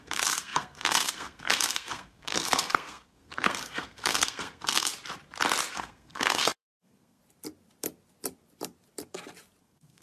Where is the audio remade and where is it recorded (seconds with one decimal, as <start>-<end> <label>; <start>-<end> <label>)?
0.0-4.9 remade; 4.9-5.7 recorded; 5.7-7.2 remade; 7.2-9.6 recorded; 9.6-10.0 remade

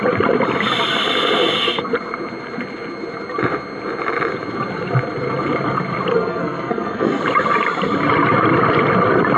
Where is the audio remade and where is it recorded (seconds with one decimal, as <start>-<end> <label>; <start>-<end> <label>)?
0.0-6.1 recorded; 6.1-7.2 remade; 7.2-9.4 recorded

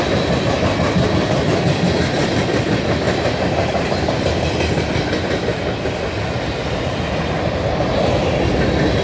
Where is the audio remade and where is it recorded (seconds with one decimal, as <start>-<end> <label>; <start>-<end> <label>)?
0.0-9.0 recorded

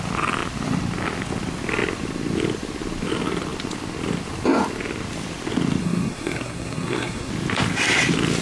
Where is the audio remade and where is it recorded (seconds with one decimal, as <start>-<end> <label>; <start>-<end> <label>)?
0.0-5.8 recorded; 5.8-7.3 remade; 7.3-8.4 recorded

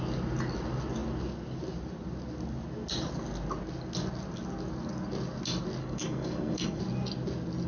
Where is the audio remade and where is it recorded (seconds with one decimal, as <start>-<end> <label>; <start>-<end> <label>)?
0.0-5.8 recorded; 5.8-6.8 remade; 6.8-7.7 recorded

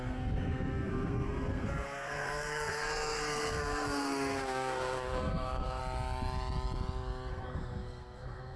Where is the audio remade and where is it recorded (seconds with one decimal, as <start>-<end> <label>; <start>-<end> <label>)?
0.0-5.8 remade; 5.8-7.3 recorded; 7.3-8.6 remade

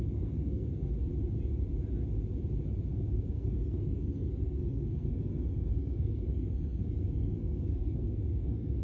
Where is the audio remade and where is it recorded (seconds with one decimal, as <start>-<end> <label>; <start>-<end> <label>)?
0.0-1.1 remade; 1.1-2.9 recorded; 2.9-8.8 remade